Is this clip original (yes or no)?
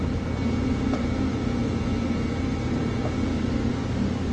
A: yes